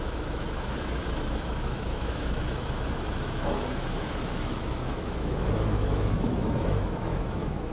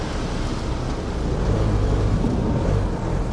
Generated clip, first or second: first